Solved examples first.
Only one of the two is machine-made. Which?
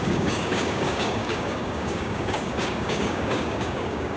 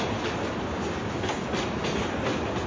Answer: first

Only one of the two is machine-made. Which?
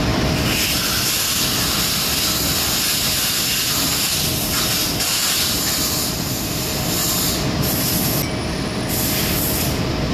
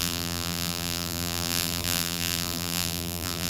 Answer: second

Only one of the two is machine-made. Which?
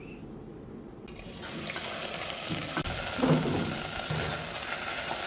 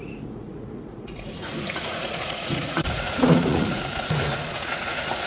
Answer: second